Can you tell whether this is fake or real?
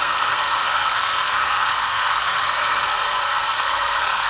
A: fake